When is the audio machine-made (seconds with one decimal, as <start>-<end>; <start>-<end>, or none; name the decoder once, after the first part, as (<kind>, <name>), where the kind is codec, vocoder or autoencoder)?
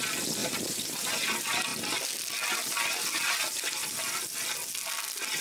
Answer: 0.4-1.1 (vocoder, BigVGAN v2)